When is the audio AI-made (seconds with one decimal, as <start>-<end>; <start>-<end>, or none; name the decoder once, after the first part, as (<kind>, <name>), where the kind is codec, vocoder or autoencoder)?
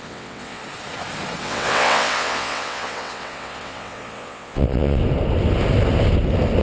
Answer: 0.0-0.6 (vocoder, WaveNeXt); 1.4-5.0